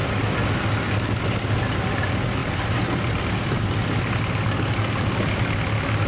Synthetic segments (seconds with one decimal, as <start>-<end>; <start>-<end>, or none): none